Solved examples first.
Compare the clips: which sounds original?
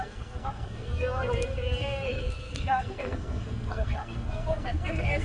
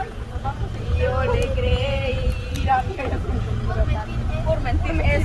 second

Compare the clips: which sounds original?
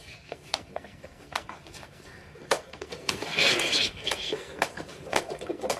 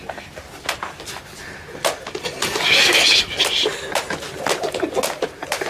second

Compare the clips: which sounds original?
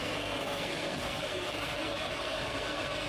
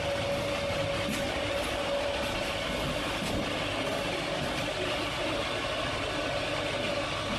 second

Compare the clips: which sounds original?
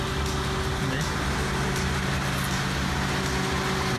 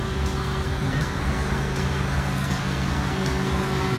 first